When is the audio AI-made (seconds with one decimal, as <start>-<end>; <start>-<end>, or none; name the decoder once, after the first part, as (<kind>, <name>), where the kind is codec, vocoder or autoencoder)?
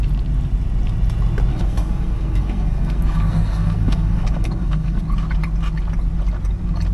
1.5-5.0 (codec, SNAC)